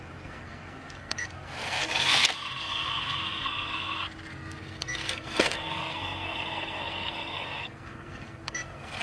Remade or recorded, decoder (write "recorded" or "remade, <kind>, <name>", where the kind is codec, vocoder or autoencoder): remade, codec, SNAC